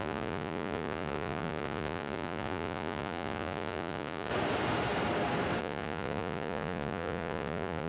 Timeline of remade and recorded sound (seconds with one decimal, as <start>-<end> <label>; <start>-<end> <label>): 0.0-4.3 remade; 4.3-5.6 recorded; 5.6-7.9 remade